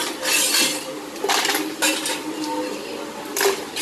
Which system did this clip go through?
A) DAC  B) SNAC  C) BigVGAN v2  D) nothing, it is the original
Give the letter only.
D